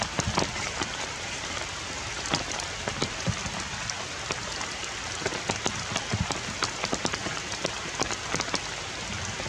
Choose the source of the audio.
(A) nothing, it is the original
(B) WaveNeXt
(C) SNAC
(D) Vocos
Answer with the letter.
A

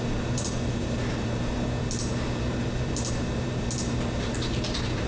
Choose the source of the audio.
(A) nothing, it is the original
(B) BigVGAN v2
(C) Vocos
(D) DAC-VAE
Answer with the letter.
B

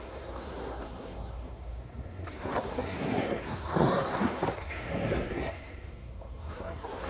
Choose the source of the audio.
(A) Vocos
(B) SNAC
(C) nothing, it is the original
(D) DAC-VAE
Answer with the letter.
B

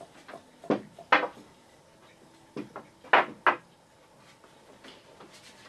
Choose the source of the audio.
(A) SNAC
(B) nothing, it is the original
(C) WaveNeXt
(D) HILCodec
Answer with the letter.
B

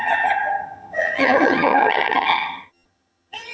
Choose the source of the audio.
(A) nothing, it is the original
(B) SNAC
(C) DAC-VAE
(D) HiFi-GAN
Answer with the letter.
D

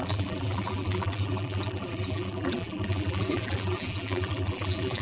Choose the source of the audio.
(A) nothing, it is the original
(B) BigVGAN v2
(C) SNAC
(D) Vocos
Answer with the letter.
B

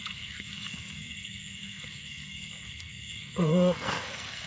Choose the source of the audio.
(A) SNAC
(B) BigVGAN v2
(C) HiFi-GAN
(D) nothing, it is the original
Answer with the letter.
A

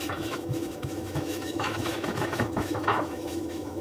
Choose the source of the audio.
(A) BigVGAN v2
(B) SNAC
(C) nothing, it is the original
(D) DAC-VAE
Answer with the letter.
D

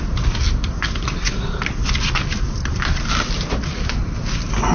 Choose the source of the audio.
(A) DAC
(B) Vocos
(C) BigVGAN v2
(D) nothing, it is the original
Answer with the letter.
D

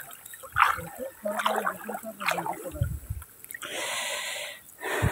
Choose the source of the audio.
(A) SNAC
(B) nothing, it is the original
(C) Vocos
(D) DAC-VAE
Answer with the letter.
B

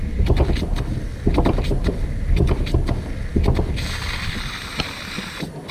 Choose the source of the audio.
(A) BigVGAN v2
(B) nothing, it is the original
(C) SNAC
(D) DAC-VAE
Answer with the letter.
B